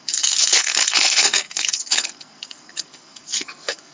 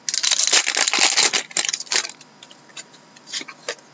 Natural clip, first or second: second